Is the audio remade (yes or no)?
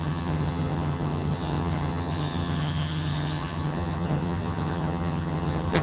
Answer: yes